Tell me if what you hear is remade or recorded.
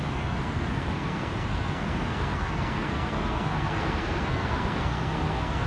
remade